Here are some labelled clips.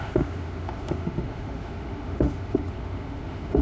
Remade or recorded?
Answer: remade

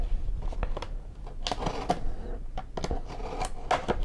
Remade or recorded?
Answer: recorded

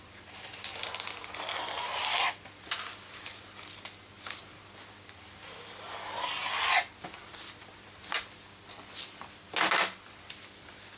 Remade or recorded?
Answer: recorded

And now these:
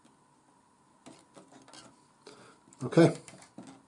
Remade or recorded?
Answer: recorded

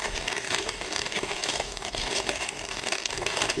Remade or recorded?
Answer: remade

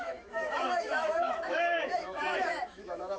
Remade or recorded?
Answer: remade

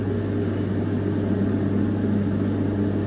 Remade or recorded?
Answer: recorded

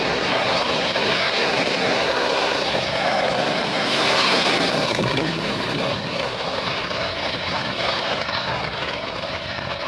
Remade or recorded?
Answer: remade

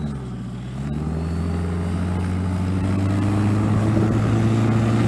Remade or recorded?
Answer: recorded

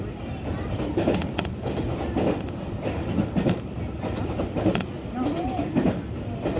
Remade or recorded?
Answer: recorded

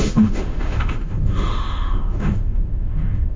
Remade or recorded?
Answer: remade